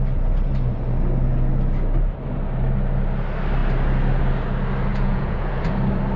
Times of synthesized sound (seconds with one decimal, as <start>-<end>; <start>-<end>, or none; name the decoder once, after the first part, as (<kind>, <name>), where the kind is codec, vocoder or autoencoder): 4.9-5.5 (vocoder, Vocos)